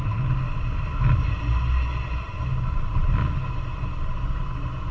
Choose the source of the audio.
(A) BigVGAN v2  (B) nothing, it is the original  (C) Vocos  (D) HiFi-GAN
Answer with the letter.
B